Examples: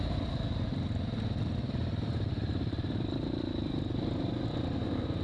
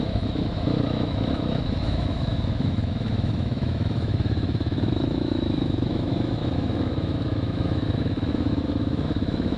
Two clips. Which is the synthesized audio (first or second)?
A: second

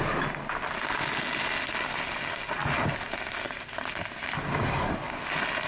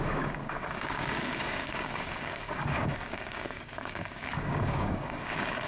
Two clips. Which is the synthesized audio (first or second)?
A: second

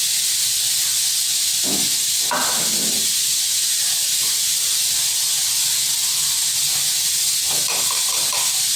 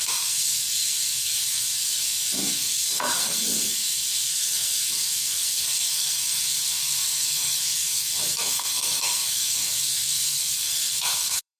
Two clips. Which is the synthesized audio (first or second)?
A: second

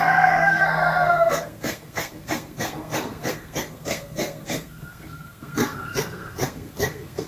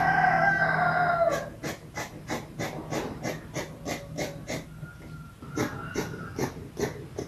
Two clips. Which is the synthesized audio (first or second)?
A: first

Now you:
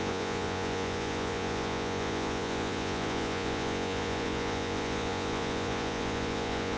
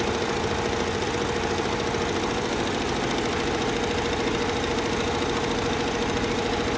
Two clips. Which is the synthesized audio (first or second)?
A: first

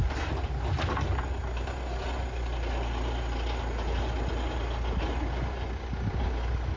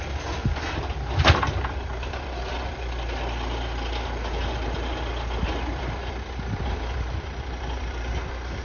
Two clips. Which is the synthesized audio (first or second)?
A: second